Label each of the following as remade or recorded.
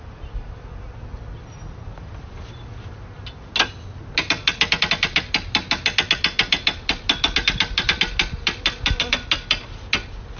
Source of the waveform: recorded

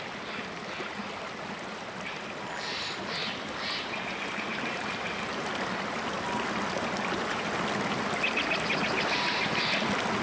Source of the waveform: recorded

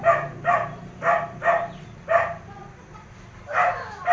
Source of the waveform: recorded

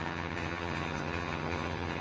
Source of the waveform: remade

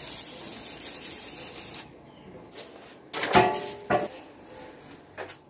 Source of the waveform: recorded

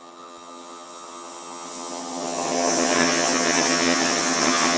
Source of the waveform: remade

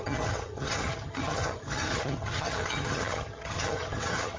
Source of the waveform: remade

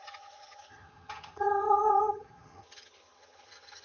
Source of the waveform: remade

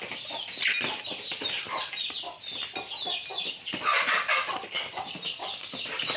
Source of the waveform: recorded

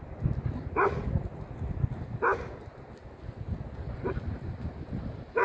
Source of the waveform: recorded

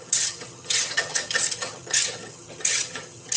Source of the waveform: remade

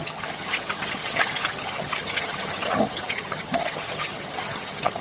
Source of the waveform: remade